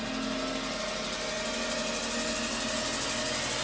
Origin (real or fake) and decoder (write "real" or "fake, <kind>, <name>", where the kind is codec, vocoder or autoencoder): real